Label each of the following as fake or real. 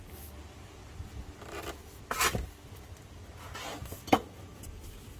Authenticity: real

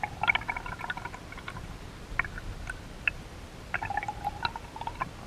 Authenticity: real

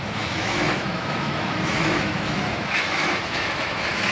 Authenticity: fake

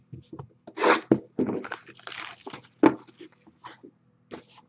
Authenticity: real